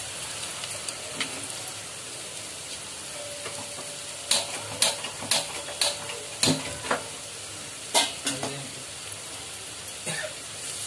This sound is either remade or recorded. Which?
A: recorded